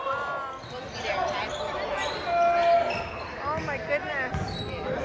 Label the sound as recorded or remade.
recorded